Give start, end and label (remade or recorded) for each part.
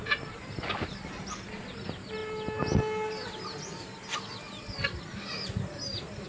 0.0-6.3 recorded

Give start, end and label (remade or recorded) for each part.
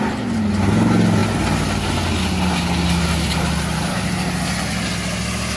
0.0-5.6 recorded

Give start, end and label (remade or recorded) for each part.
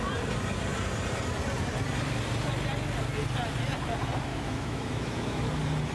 0.0-4.3 recorded; 4.3-5.5 remade; 5.5-5.9 recorded